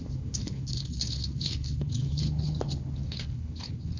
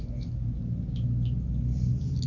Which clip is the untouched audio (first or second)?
second